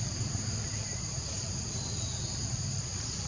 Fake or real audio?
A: fake